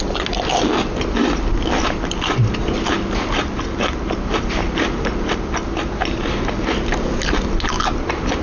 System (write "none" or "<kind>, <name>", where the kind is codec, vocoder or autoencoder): none